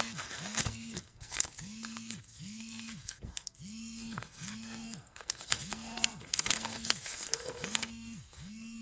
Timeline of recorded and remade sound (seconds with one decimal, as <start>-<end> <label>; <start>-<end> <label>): 0.0-8.8 remade